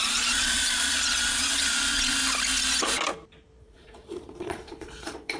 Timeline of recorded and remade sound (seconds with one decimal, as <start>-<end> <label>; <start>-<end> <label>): 0.0-2.2 remade; 2.2-3.6 recorded; 3.6-5.4 remade